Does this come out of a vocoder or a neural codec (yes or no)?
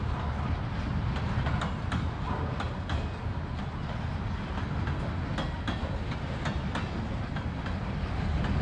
no